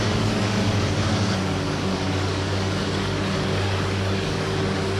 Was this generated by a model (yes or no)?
yes